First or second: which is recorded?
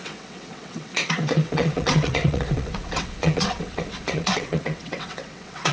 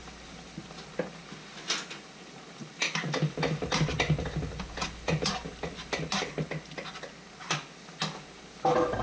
second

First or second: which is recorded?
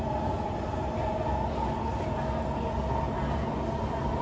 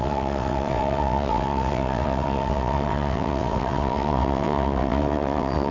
first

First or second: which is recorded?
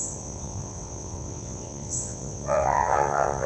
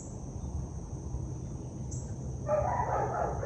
second